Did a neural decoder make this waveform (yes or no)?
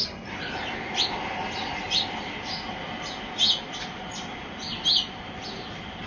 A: no